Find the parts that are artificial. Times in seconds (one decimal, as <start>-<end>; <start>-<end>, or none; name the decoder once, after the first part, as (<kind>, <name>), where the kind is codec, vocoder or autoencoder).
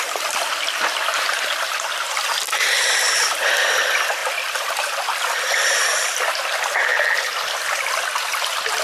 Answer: none